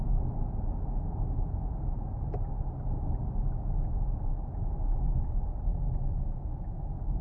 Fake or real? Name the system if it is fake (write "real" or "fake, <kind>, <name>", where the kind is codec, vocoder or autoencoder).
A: real